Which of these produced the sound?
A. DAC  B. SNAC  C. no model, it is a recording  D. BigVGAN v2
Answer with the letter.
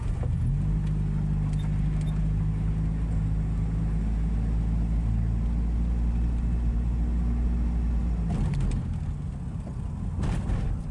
C